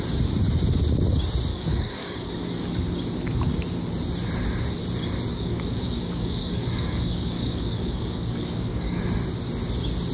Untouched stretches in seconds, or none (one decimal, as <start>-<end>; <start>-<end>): 0.0-1.5; 2.7-5.3; 9.0-10.1

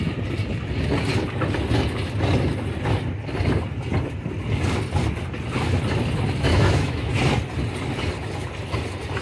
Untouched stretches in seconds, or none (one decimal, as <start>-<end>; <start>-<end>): 0.0-6.5; 7.1-9.2